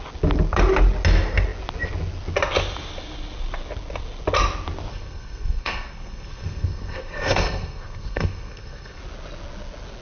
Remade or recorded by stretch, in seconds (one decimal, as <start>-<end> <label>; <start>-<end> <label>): 0.0-4.9 recorded; 4.9-9.0 remade; 9.0-10.0 recorded